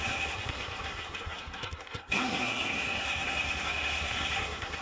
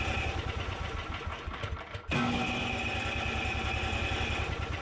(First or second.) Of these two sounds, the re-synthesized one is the first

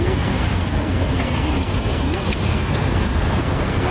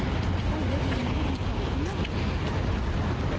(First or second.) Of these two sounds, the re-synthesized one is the first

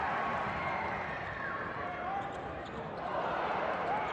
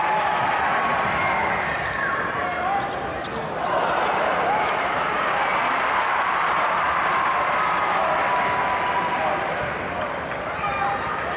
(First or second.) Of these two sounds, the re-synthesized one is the first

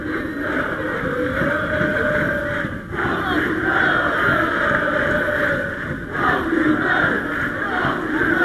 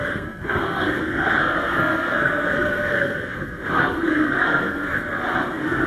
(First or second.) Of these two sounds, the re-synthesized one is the second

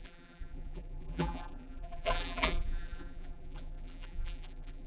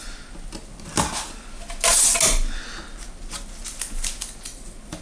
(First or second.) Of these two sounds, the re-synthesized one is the first